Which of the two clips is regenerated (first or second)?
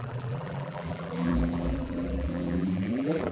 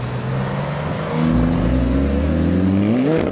first